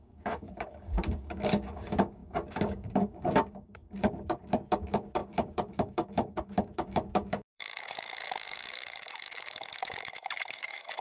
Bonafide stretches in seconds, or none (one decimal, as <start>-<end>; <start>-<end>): none

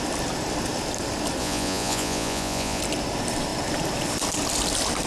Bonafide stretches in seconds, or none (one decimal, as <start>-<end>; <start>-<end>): 0.0-1.4; 2.8-5.1